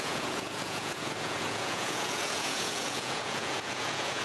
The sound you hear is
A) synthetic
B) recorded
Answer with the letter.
A